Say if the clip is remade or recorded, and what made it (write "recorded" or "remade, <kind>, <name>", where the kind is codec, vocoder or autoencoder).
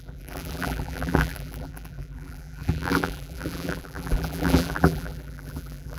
remade, vocoder, BigVGAN v2